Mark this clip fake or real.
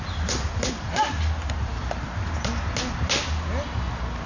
real